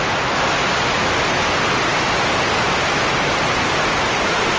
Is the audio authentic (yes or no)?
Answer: yes